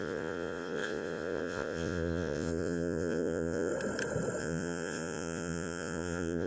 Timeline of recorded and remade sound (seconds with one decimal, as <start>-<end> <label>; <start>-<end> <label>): 0.0-3.7 remade; 3.7-4.4 recorded; 4.4-6.5 remade